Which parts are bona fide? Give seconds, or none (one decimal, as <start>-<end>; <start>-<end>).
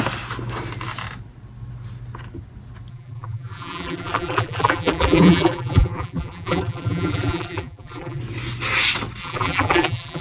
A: 0.0-2.9; 8.2-9.2